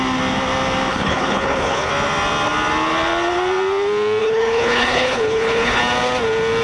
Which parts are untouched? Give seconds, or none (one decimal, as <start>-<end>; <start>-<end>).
0.0-0.9; 1.9-4.2; 5.8-6.6